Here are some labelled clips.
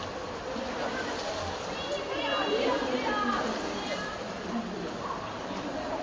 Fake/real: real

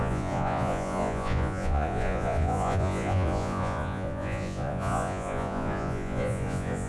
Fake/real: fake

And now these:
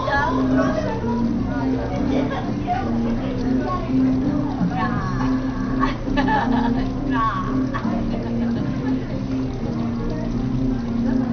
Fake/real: real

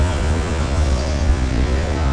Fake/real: fake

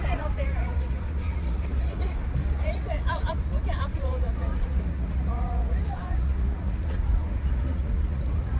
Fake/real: fake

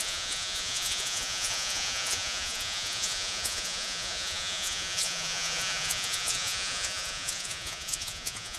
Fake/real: fake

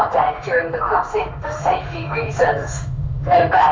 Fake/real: fake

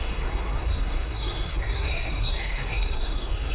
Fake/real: fake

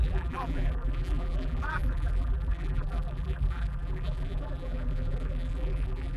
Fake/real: fake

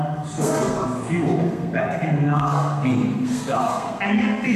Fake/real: fake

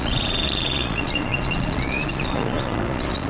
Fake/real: fake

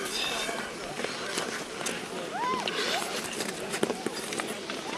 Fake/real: real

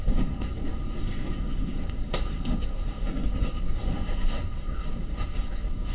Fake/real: fake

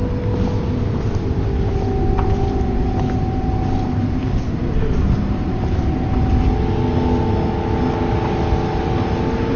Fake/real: real